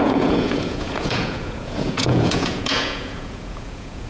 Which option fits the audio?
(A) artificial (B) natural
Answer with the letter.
A